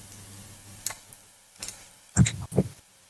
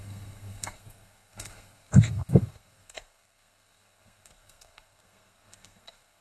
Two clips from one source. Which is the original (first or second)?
first